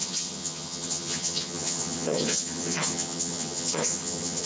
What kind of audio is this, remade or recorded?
remade